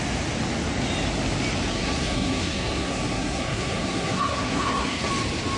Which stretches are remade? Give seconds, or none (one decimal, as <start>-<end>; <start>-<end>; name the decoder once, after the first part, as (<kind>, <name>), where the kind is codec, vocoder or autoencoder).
1.7-5.1 (codec, SNAC)